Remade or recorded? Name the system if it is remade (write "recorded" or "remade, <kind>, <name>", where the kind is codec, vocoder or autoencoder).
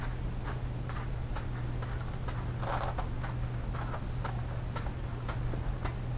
recorded